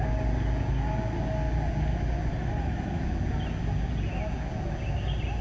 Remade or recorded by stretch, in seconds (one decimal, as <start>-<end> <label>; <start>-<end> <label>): 0.0-2.3 recorded; 2.3-3.0 remade; 3.0-5.4 recorded